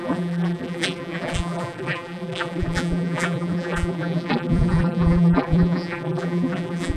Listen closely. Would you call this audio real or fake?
fake